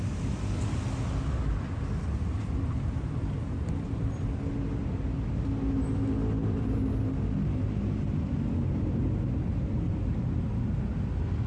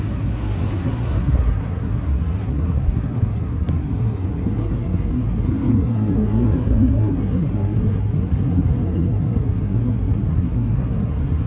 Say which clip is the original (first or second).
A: first